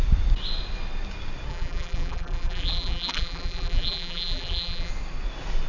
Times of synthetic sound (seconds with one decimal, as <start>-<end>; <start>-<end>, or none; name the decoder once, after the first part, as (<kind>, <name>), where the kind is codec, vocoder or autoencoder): 1.5-4.9 (vocoder, BigVGAN v2)